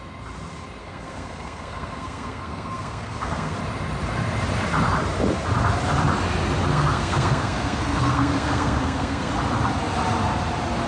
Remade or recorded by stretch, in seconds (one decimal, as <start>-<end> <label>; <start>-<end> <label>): 0.0-0.8 recorded; 0.8-3.6 remade; 3.6-6.7 recorded; 6.7-9.3 remade; 9.3-10.9 recorded